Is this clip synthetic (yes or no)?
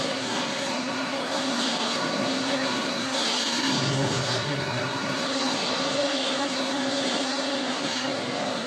yes